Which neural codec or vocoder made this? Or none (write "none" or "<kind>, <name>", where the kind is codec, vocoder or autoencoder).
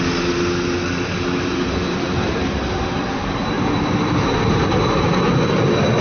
none